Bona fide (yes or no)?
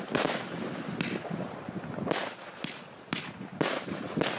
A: no